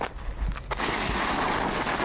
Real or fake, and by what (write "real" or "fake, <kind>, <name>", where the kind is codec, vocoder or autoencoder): real